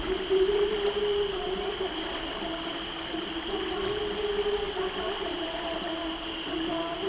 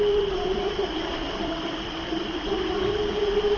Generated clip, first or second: second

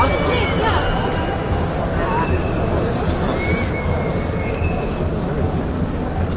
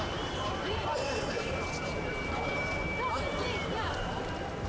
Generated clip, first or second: second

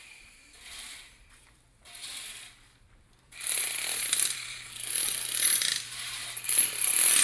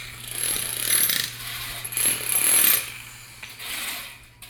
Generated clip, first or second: first